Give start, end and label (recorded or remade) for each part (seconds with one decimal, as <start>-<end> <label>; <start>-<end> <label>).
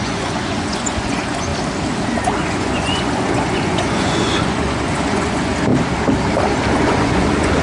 0.0-1.5 remade; 1.5-2.2 recorded; 2.2-5.7 remade; 5.7-6.7 recorded; 6.7-7.6 remade